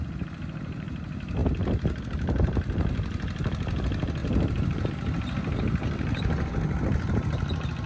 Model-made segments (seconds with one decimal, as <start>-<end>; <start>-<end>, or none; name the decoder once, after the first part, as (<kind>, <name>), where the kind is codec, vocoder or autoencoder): 4.2-4.9 (vocoder, BigVGAN v2)